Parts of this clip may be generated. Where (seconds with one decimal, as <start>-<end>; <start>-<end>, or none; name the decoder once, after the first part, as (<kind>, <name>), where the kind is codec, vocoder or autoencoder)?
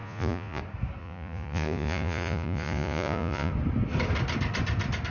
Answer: 0.0-0.6 (vocoder, Vocos); 1.0-3.5